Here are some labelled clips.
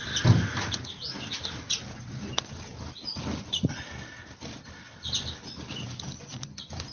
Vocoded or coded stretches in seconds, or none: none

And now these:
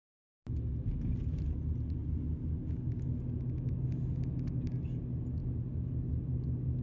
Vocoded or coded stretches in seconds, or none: none